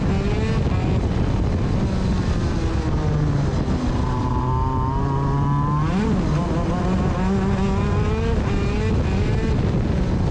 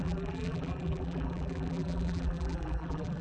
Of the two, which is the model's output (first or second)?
second